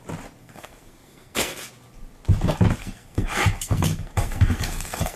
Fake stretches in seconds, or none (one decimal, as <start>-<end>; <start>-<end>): 0.4-1.7; 2.8-5.2

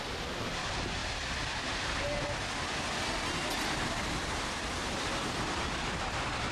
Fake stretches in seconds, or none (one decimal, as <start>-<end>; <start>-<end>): none

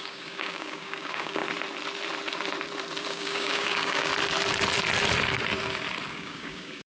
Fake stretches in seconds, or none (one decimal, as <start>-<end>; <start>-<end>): 0.0-1.4; 3.1-4.1; 6.1-6.9

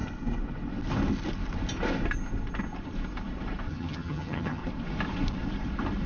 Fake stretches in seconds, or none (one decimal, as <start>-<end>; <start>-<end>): 3.7-4.6

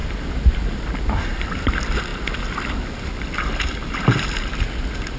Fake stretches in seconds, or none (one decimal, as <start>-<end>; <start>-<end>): none

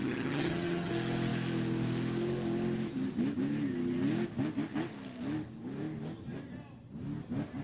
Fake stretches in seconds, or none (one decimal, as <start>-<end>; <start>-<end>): 0.0-0.9

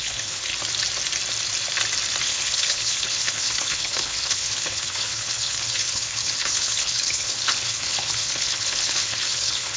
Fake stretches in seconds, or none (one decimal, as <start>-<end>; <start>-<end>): 0.0-0.5; 2.2-9.8